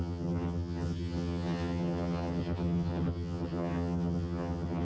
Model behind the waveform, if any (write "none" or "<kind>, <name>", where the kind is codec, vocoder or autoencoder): vocoder, HiFi-GAN